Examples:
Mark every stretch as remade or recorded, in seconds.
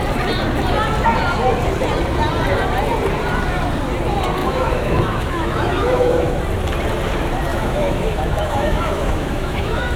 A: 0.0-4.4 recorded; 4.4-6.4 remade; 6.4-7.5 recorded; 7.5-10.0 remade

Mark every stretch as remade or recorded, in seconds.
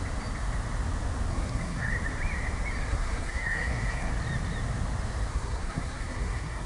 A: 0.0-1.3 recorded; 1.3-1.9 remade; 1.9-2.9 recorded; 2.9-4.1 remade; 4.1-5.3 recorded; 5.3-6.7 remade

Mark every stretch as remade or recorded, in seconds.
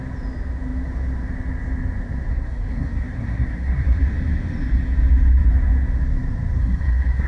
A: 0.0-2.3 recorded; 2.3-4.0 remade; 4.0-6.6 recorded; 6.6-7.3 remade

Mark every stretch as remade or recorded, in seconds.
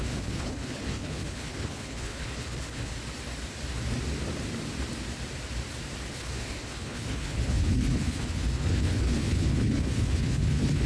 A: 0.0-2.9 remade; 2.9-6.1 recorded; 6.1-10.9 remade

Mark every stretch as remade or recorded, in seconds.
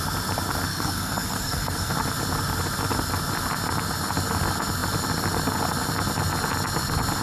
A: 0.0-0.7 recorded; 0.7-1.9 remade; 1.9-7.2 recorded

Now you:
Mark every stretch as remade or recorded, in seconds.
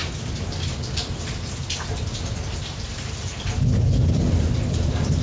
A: 0.0-5.2 recorded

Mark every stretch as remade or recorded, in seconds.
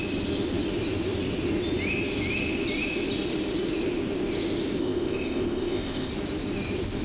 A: 0.0-4.8 recorded; 4.8-6.1 remade; 6.1-7.0 recorded